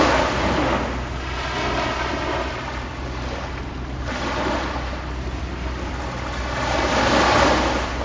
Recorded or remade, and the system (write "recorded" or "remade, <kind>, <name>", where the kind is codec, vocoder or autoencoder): recorded